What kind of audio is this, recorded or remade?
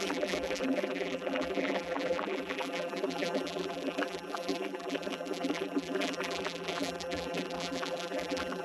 remade